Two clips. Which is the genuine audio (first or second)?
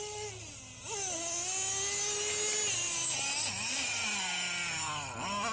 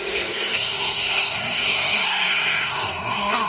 first